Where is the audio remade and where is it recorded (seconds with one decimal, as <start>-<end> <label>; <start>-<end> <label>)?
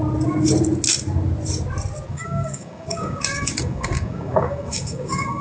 0.0-2.1 recorded; 2.1-5.4 remade